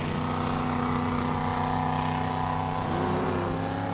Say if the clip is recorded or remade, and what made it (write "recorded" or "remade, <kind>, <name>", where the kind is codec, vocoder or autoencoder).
recorded